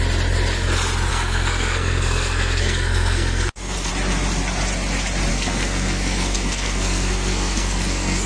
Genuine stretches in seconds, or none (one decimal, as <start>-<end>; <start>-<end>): 0.0-1.1; 3.9-5.3

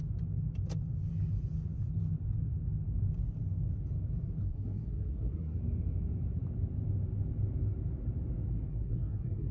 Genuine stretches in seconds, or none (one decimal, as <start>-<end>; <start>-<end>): 0.0-4.4; 5.6-8.7

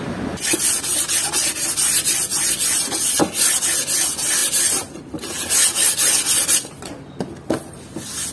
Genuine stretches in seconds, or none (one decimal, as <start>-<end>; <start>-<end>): 0.0-8.3

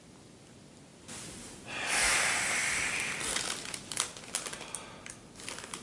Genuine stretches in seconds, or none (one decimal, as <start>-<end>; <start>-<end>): 0.0-5.8